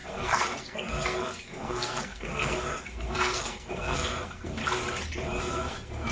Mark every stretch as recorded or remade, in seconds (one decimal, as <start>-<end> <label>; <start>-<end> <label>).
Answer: 0.0-4.6 remade; 4.6-5.4 recorded; 5.4-6.1 remade

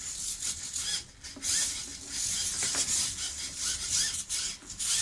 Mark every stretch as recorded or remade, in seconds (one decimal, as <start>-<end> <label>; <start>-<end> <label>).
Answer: 0.0-5.0 recorded

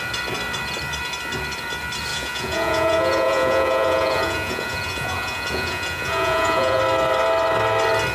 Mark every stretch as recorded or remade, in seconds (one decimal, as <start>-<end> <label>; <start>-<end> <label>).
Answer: 0.0-2.1 recorded; 2.1-6.8 remade; 6.8-8.1 recorded